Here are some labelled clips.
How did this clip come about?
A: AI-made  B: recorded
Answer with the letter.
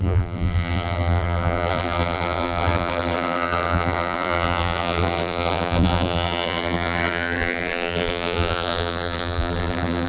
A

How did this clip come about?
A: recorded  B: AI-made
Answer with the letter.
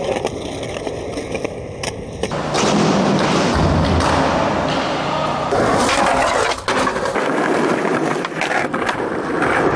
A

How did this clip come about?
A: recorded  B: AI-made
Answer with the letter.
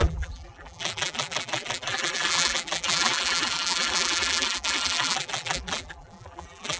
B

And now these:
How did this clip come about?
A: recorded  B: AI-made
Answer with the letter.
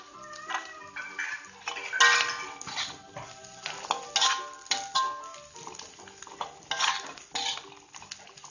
A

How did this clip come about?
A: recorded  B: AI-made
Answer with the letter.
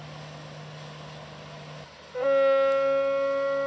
A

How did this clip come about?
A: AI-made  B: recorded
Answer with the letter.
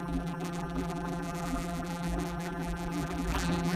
A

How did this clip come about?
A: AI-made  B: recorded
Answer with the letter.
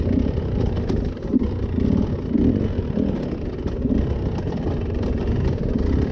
B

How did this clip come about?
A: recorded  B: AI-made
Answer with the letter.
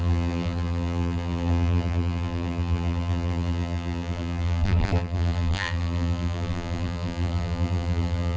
B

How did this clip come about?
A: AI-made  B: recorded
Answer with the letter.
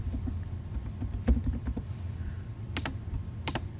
B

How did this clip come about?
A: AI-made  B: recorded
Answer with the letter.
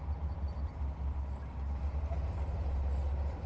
A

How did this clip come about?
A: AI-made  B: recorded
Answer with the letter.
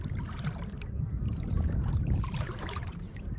A